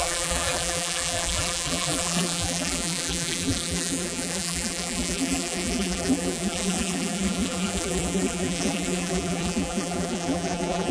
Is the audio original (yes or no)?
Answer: no